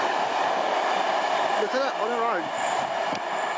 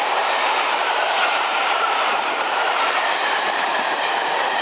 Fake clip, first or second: second